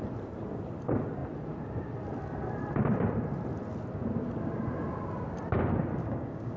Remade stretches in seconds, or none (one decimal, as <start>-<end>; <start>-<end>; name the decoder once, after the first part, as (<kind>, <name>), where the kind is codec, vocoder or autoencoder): 6.0-6.6 (codec, DAC)